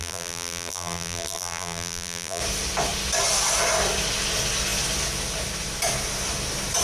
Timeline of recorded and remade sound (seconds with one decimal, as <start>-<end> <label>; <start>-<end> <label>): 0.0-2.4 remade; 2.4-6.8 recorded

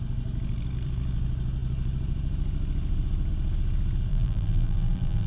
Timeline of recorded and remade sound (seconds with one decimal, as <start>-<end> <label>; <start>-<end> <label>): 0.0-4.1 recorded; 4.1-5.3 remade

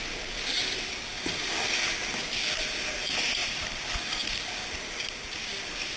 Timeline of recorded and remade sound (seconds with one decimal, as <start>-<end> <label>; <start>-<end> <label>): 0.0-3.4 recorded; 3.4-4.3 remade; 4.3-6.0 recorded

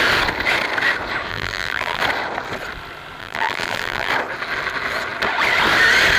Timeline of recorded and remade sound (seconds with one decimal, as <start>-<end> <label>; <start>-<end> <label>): 0.0-1.3 recorded; 1.3-2.0 remade; 2.0-3.2 recorded; 3.2-4.1 remade; 4.1-6.2 recorded